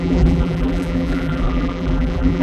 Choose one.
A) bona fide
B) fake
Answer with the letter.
B